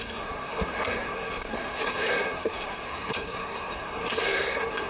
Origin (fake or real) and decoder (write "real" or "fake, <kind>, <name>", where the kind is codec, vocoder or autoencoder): fake, codec, SNAC